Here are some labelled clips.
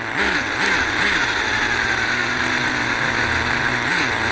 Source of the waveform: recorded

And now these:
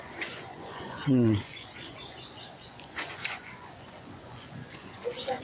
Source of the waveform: remade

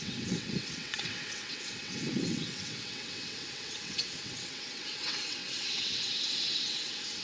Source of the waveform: remade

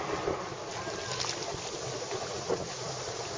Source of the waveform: recorded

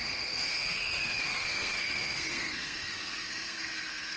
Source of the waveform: remade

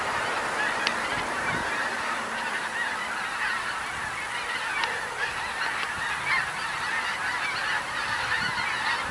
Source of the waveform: recorded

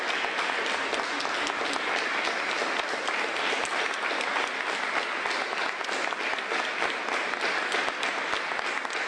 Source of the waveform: recorded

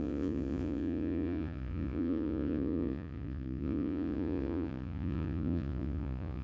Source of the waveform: remade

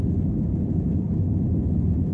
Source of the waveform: recorded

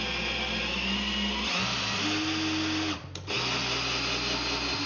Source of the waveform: recorded